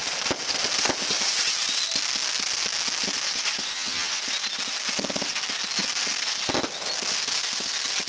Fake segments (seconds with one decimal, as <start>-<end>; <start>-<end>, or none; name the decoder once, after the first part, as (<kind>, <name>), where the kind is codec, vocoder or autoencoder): 3.7-4.2 (vocoder, HiFi-GAN)